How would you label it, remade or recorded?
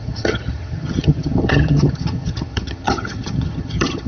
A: remade